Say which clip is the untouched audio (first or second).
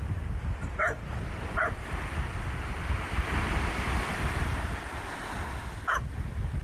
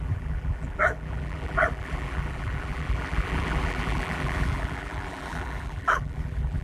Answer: first